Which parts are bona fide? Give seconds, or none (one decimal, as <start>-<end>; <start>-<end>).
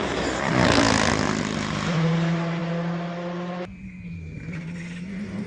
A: 0.0-5.5